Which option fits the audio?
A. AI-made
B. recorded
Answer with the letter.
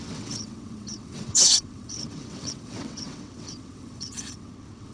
A